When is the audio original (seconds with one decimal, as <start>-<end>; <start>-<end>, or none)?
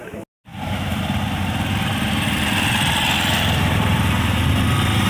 0.0-5.1